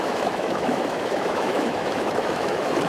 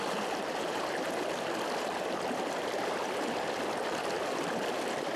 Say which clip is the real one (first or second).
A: second